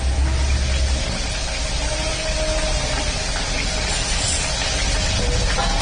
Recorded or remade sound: recorded